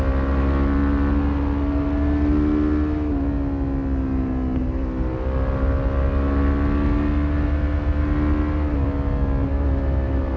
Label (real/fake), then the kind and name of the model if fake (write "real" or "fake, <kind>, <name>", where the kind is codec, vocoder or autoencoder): real